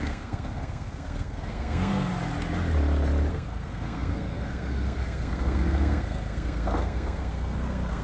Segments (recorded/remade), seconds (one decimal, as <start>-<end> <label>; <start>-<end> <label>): 0.0-2.1 remade; 2.1-3.3 recorded; 3.3-8.0 remade

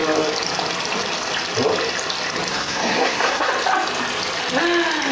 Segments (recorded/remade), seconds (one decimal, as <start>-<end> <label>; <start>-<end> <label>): 0.0-2.5 recorded; 2.5-3.5 remade; 3.5-5.1 recorded

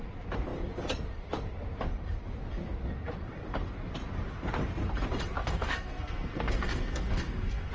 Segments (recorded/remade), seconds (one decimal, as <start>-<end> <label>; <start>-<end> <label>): 0.0-5.4 recorded; 5.4-7.7 remade

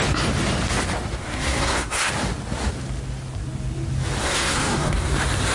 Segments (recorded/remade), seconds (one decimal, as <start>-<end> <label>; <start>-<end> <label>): 0.0-1.2 recorded; 1.2-2.1 remade; 2.1-4.2 recorded; 4.2-5.1 remade; 5.1-5.5 recorded